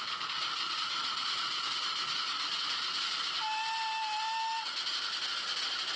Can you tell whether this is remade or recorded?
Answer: recorded